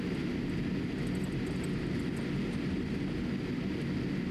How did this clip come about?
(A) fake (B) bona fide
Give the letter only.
B